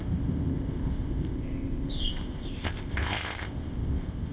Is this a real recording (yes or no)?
no